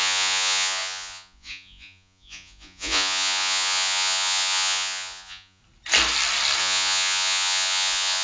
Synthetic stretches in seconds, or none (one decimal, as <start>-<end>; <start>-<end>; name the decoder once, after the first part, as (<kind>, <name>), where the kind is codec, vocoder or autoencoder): 0.0-5.6 (vocoder, Vocos); 6.6-8.2